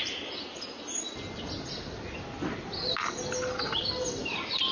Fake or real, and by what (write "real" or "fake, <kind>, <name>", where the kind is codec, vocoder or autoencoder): real